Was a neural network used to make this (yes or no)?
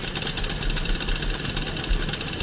no